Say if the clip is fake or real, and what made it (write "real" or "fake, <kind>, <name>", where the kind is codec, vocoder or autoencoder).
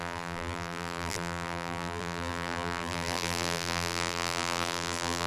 fake, vocoder, BigVGAN v2